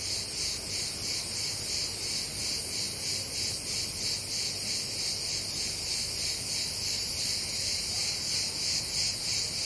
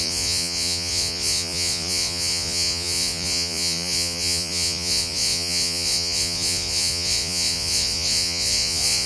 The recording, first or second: first